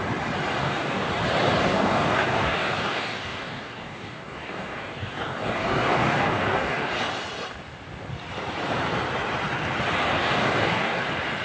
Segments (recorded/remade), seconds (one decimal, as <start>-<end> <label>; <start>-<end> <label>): 0.0-0.6 recorded; 0.6-1.1 remade; 1.1-1.6 recorded; 1.6-6.9 remade; 6.9-10.2 recorded; 10.2-11.0 remade; 11.0-11.4 recorded